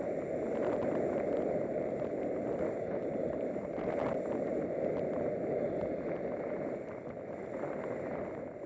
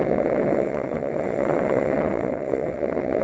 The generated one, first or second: second